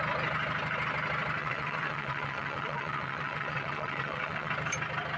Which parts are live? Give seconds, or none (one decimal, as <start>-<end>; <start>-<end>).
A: 0.0-1.4; 4.5-5.2